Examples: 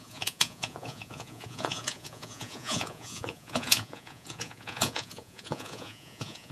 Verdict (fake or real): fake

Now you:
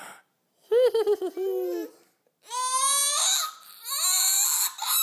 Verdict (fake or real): real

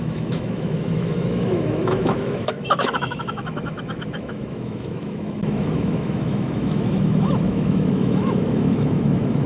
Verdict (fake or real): fake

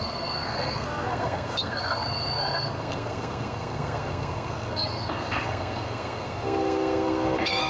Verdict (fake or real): fake